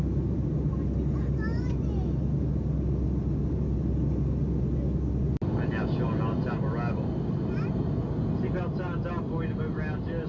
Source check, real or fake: real